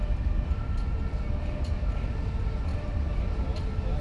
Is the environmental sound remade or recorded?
recorded